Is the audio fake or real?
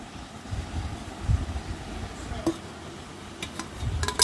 real